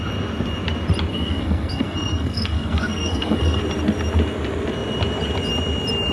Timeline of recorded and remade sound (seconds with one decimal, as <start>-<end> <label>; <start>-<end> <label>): 0.0-1.1 recorded; 1.1-3.6 remade; 3.6-6.1 recorded